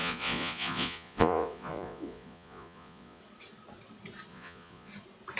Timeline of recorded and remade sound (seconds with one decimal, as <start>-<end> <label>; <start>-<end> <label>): 0.0-3.2 remade; 3.2-4.3 recorded; 4.3-4.9 remade; 4.9-5.4 recorded